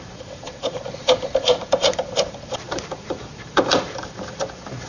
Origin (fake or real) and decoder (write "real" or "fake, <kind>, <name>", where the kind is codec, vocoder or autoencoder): fake, vocoder, BigVGAN v2